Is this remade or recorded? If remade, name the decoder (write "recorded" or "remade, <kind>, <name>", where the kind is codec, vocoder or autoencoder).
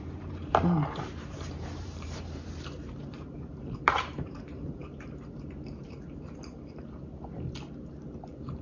remade, vocoder, BigVGAN v2